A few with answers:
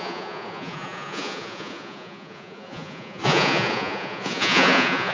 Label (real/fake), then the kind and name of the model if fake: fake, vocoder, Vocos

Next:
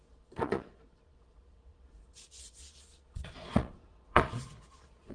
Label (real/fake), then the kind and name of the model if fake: fake, vocoder, Vocos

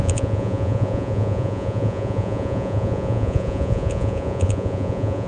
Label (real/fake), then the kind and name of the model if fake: fake, vocoder, Vocos